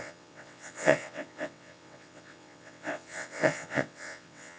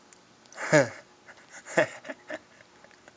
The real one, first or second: second